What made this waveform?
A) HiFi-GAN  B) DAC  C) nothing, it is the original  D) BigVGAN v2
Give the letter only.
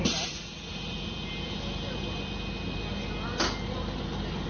C